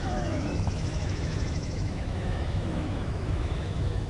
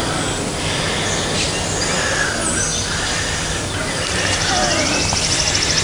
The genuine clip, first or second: second